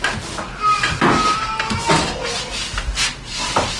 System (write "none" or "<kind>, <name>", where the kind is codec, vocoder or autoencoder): none